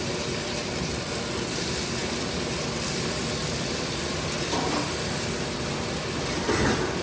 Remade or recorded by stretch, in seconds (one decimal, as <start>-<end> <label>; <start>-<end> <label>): 0.0-3.4 recorded; 3.4-4.1 remade; 4.1-7.0 recorded